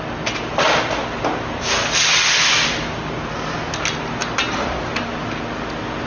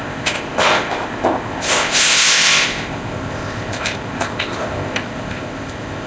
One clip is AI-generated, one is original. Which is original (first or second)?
first